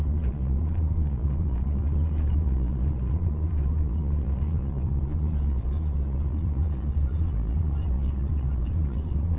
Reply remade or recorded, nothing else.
remade